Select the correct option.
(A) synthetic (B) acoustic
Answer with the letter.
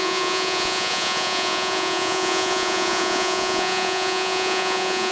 A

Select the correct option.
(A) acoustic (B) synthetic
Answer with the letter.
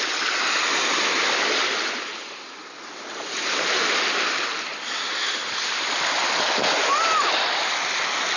A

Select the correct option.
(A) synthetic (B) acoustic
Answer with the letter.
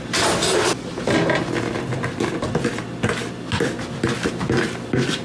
B